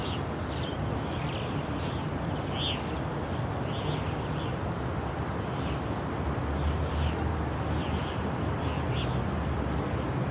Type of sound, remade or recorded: recorded